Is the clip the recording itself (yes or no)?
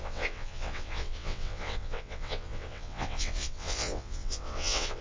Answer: no